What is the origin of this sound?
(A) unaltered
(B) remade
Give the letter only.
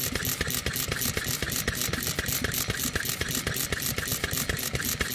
A